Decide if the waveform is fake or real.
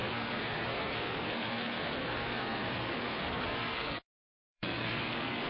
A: fake